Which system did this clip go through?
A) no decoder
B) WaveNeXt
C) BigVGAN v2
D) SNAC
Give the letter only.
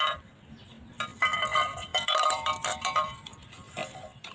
C